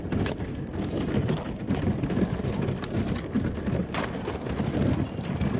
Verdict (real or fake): real